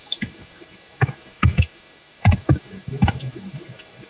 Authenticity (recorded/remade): remade